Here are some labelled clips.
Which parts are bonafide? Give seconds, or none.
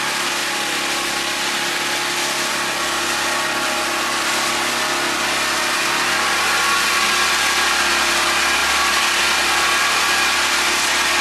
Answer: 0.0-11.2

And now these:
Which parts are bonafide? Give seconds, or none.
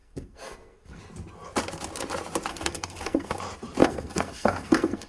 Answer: 1.0-2.5; 3.4-3.8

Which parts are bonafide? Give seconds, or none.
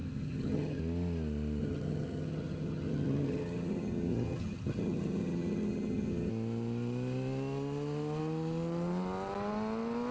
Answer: 0.8-1.6; 6.3-10.1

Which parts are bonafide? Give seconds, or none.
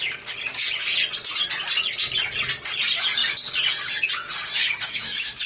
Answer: 0.0-4.6